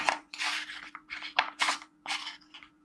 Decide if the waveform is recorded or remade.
remade